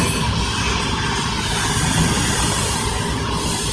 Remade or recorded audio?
recorded